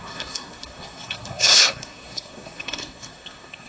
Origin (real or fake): fake